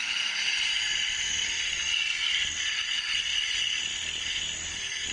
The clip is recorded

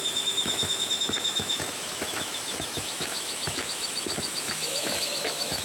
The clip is remade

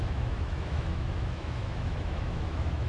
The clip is remade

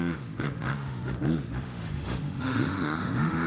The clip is remade